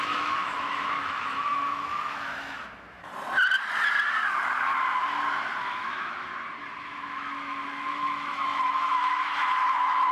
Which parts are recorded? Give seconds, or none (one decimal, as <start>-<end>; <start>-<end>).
3.1-5.6; 6.3-6.8